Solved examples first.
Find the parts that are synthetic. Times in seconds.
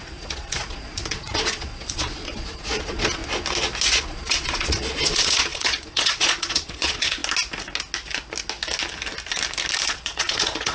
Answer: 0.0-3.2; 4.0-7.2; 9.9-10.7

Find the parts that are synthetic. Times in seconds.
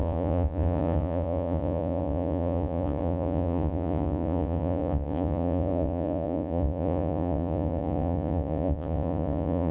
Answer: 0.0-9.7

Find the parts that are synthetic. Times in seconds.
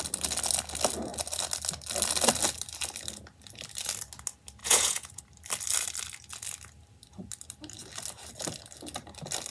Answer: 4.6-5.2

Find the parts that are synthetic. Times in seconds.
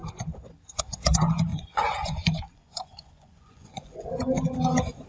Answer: 1.5-4.1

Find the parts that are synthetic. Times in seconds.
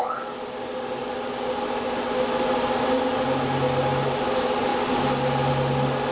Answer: none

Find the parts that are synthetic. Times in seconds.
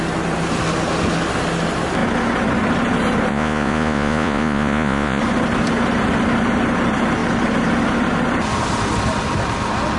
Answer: 3.3-5.2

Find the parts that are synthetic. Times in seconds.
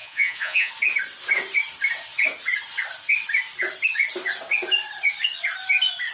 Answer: 0.0-0.7